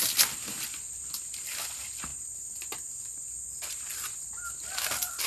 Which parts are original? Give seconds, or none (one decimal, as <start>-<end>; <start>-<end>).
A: 0.0-5.3